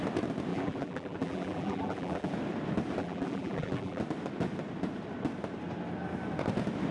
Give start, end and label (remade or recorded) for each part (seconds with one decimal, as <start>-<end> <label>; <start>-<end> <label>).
0.0-0.5 recorded; 0.5-2.3 remade; 2.3-3.0 recorded; 3.0-4.0 remade; 4.0-6.9 recorded